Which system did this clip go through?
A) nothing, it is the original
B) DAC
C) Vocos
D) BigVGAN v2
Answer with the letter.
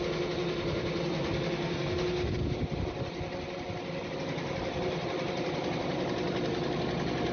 A